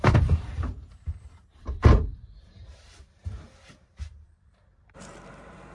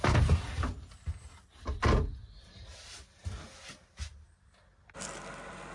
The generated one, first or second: first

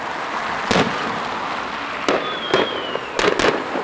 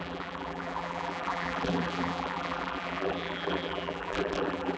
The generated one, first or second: second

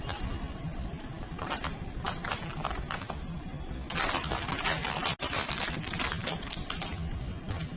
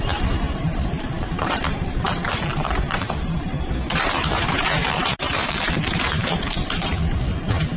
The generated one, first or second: second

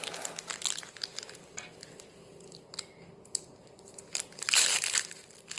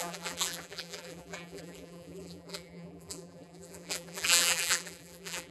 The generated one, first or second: second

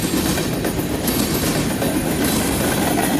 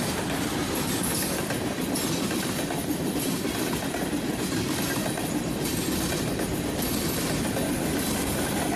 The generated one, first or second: second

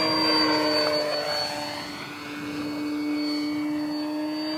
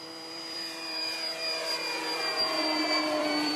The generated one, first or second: second